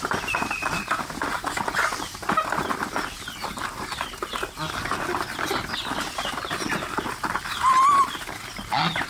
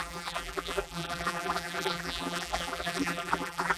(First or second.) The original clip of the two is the first